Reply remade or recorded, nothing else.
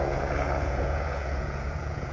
remade